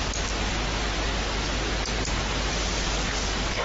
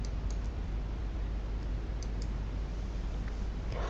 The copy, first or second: second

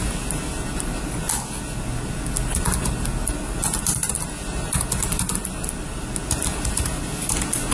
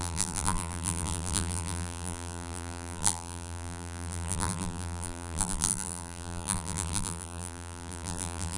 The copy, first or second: second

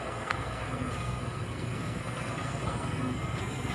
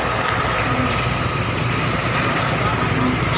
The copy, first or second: first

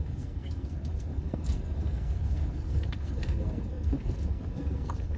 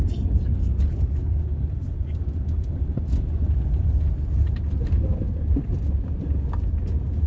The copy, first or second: first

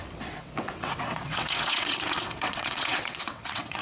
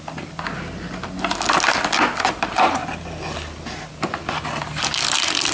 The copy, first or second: first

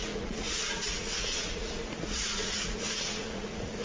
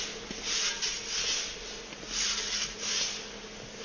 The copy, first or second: first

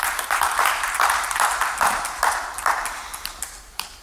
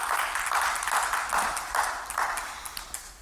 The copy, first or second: first